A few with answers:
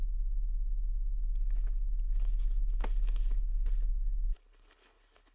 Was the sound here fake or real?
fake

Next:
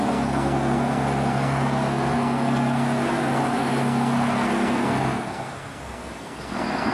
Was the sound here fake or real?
fake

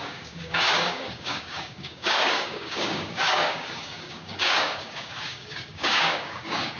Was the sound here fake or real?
fake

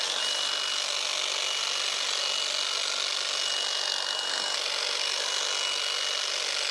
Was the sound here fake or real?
real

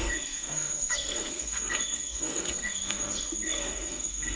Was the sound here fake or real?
fake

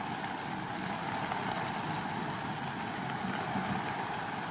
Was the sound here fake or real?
real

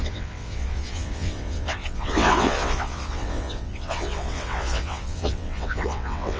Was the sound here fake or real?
fake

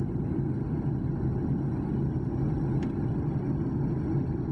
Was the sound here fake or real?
real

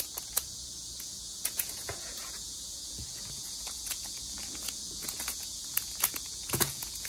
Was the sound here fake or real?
fake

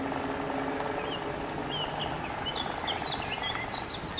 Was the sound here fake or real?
real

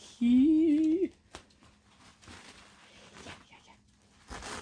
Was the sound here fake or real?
real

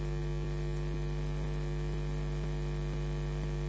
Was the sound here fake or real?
real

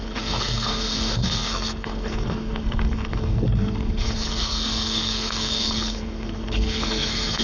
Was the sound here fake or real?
fake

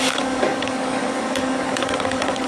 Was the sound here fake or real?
fake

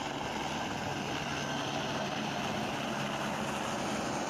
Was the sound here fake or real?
real